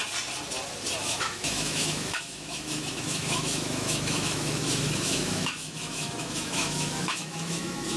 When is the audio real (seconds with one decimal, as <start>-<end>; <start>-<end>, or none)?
0.0-1.0